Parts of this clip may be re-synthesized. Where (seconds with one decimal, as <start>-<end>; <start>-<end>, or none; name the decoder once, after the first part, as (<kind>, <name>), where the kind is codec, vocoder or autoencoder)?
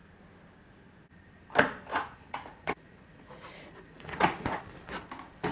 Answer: 1.9-4.6 (vocoder, Vocos)